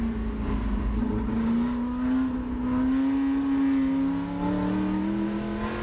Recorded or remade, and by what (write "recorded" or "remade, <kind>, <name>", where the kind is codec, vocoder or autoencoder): recorded